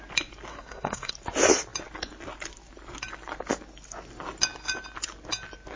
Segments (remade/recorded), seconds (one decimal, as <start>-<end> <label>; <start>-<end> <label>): 0.0-0.5 recorded; 0.5-1.1 remade; 1.1-5.8 recorded